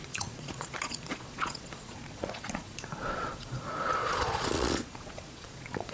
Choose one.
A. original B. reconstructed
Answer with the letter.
B